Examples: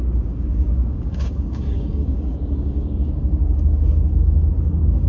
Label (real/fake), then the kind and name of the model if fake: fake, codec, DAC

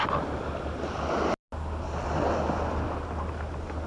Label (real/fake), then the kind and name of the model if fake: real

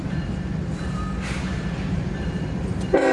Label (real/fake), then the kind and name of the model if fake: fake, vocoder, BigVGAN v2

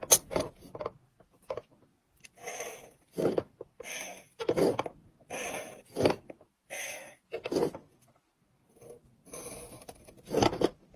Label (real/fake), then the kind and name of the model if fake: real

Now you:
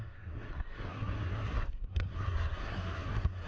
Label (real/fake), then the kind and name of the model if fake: fake, codec, SNAC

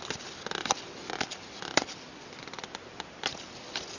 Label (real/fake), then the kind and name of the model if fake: real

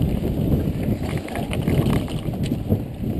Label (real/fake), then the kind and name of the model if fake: real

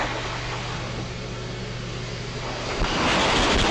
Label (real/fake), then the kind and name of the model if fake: real